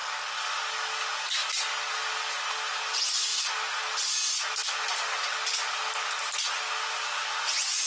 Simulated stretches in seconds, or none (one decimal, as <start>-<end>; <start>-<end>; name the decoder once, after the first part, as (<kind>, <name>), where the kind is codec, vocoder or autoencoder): 0.0-0.6 (vocoder, BigVGAN v2)

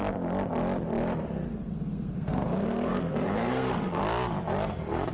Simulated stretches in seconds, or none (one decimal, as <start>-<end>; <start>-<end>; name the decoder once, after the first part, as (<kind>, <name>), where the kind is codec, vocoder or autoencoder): 1.5-4.0 (codec, SNAC)

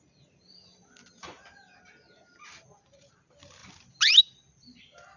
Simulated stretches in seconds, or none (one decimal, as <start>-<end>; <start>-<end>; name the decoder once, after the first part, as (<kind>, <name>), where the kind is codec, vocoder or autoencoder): none

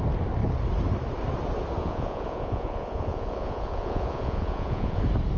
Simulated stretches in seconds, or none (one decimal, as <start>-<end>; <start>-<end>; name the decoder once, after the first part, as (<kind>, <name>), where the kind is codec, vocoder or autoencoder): 1.8-5.0 (vocoder, Vocos)